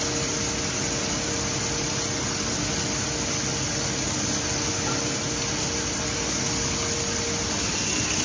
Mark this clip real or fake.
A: real